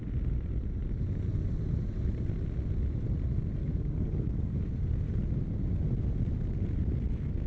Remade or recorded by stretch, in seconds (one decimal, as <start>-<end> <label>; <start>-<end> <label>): 0.0-3.6 recorded; 3.6-4.7 remade; 4.7-7.5 recorded